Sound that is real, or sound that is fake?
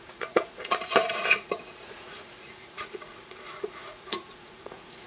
fake